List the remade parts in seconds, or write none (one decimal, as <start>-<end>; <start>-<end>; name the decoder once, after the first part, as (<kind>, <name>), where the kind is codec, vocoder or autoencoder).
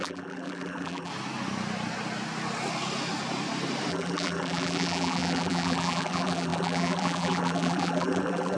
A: 0.0-1.1 (vocoder, BigVGAN v2); 3.9-8.6